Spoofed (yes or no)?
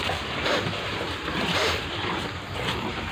yes